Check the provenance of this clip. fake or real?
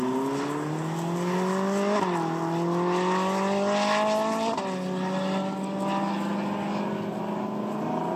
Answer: real